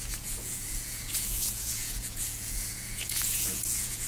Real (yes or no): no